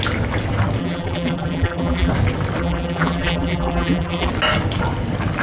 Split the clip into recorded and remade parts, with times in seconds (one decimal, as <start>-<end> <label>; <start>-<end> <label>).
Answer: 0.0-0.8 recorded; 0.8-2.1 remade; 2.1-2.6 recorded; 2.6-4.3 remade; 4.3-5.4 recorded